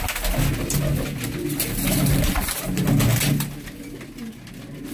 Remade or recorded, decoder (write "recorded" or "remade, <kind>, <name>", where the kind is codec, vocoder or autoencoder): recorded